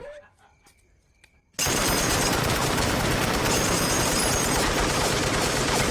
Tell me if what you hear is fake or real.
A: fake